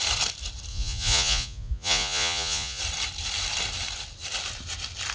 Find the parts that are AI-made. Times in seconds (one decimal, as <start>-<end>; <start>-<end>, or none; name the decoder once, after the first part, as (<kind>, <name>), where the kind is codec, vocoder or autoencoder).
0.7-2.8 (vocoder, Vocos)